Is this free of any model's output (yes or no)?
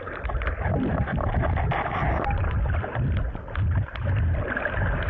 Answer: yes